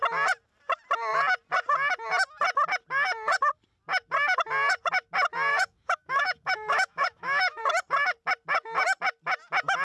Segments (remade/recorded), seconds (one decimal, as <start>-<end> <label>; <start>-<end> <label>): 0.0-5.5 recorded; 5.5-7.6 remade; 7.6-9.8 recorded